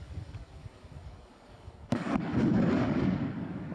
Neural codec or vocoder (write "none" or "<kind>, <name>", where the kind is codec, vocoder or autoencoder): codec, DAC